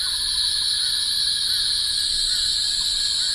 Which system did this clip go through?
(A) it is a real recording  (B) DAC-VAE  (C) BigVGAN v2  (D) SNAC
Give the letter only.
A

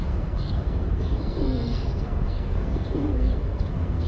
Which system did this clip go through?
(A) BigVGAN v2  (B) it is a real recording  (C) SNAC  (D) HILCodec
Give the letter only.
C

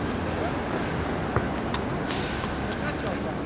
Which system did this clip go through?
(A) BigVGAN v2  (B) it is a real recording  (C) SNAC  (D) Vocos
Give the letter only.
B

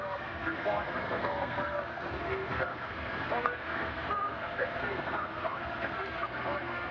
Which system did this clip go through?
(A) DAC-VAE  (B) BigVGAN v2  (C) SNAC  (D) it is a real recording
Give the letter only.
C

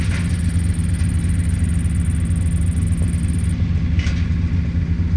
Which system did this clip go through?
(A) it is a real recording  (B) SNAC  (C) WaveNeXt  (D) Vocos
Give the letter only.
A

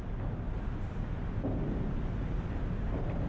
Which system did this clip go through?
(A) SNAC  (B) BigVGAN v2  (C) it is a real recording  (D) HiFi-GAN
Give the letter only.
C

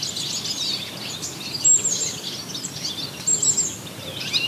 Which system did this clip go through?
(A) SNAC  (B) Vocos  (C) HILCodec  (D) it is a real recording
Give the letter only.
D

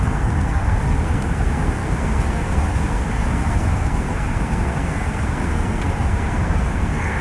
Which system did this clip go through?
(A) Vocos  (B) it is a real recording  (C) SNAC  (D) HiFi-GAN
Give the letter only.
C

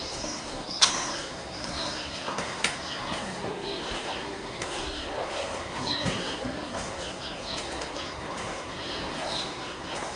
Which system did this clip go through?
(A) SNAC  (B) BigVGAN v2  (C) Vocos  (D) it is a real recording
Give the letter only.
A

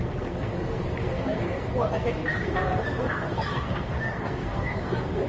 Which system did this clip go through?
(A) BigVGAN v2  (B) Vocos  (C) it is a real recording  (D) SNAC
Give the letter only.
D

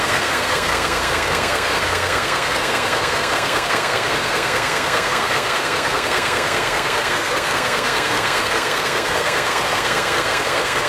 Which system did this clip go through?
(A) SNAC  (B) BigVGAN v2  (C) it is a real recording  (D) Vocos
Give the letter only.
A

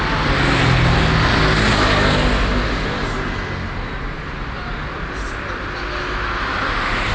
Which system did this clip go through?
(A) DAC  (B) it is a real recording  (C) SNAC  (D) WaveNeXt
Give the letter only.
B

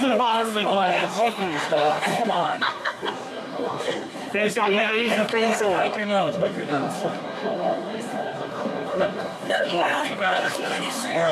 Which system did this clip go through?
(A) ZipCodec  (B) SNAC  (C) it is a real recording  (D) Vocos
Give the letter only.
B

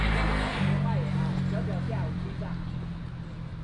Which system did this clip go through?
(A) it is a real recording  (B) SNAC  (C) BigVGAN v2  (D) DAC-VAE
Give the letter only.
A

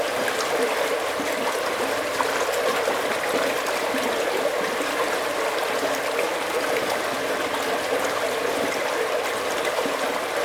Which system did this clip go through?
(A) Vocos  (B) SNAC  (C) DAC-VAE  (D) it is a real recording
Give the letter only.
D